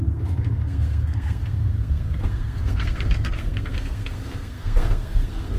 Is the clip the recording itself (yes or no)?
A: no